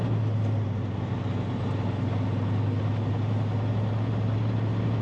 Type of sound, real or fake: real